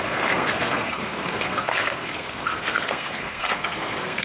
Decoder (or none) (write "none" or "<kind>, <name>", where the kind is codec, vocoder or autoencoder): codec, SNAC